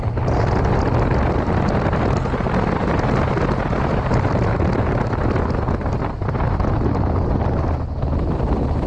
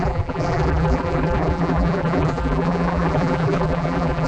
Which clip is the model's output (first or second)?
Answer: second